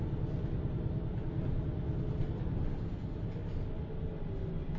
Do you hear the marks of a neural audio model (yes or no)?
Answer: no